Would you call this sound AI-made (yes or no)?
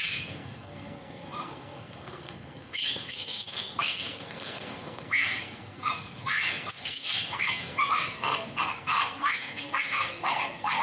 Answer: yes